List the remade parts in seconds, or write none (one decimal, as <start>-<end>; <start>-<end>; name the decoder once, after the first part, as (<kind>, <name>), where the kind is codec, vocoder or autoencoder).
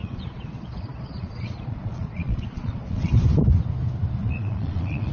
0.0-3.1 (vocoder, Vocos); 4.2-5.1